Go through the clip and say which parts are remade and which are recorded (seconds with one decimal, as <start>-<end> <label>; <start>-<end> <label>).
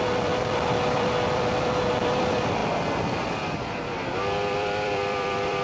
0.0-2.6 remade; 2.6-3.5 recorded; 3.5-5.6 remade